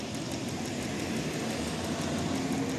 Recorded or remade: recorded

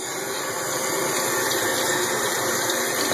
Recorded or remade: recorded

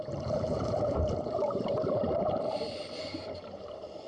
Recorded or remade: remade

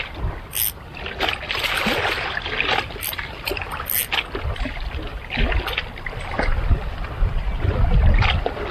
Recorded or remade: recorded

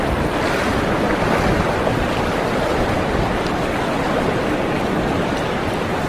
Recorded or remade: recorded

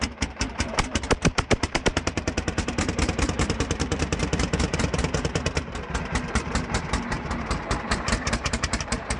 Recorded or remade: remade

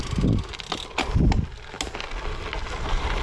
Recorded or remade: recorded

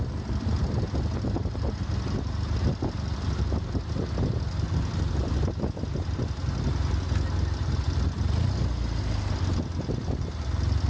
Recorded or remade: recorded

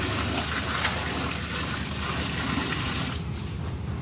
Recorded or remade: recorded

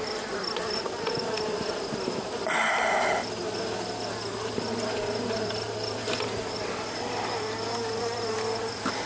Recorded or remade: remade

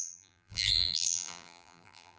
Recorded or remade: remade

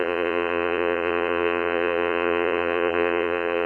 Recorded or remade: remade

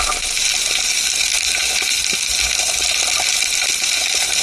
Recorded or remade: recorded